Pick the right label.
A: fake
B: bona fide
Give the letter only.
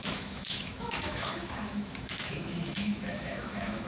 A